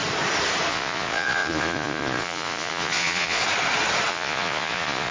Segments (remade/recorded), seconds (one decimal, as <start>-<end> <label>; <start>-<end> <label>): 0.0-0.7 recorded; 0.7-3.4 remade; 3.4-4.1 recorded; 4.1-5.1 remade